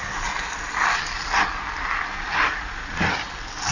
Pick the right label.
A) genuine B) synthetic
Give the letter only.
A